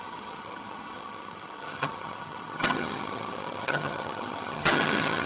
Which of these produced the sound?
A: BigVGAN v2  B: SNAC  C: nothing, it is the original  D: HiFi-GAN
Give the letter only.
D